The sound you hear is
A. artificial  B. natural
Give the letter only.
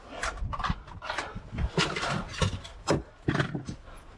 B